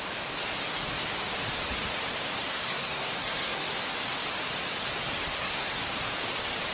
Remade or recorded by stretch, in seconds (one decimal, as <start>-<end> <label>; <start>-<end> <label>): 0.0-2.5 recorded; 2.5-3.8 remade; 3.8-5.3 recorded; 5.3-5.8 remade; 5.8-6.7 recorded